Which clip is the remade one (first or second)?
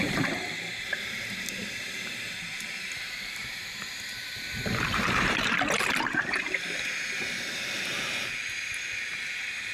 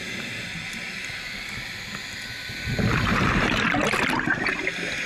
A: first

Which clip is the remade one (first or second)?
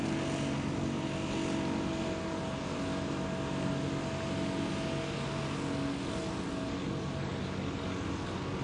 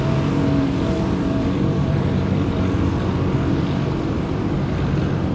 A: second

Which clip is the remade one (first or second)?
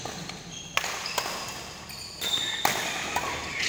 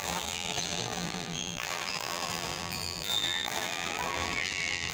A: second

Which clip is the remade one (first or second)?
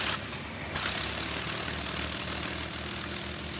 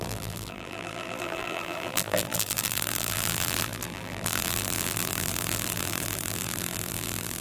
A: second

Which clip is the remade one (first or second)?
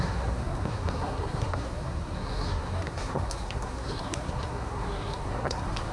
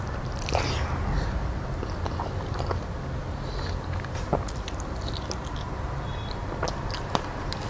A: first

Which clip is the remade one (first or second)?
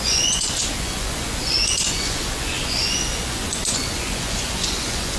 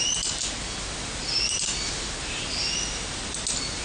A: first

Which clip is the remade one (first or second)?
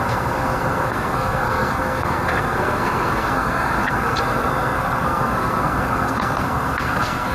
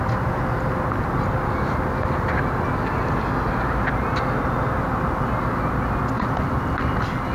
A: first